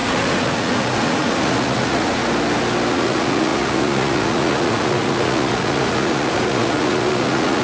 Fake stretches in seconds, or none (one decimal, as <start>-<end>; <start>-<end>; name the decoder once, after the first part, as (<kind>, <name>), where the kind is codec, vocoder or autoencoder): 0.0-2.2 (vocoder, Vocos); 2.9-7.6